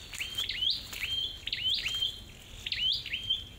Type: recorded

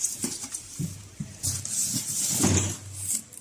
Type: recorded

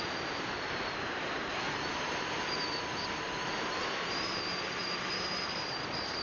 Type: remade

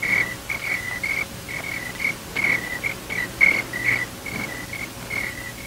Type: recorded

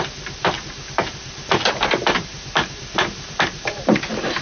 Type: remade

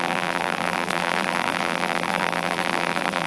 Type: remade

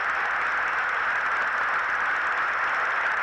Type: remade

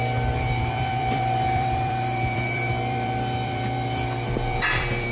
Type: remade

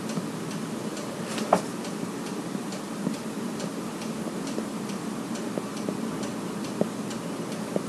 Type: remade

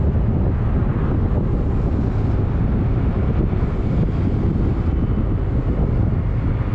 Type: recorded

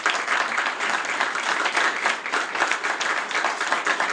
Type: remade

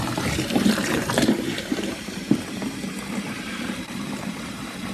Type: remade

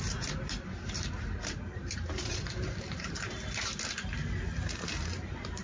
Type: remade